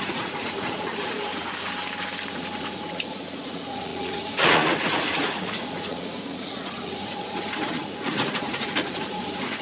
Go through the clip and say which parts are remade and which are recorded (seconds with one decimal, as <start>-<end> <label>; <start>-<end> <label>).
0.0-1.3 remade; 1.3-2.3 recorded; 2.3-9.6 remade